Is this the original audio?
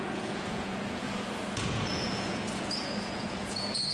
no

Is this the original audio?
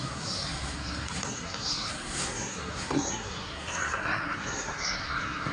no